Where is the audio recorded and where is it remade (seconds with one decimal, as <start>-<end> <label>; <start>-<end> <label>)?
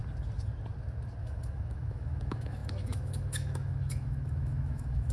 0.0-1.2 recorded; 1.2-5.1 remade